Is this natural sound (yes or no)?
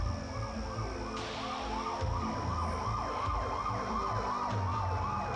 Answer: yes